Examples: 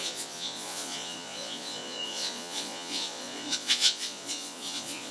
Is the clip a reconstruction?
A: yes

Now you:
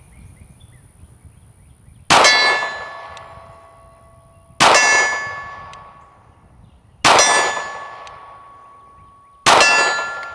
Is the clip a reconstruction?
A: no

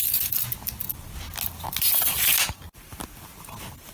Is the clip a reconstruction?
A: no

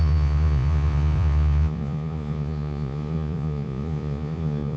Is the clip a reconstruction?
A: yes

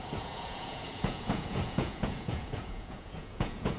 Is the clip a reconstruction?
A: yes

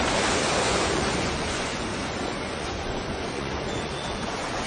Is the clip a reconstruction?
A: yes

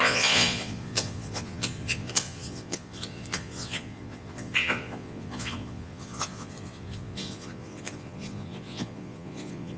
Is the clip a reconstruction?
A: yes